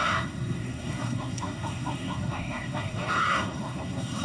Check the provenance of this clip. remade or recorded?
remade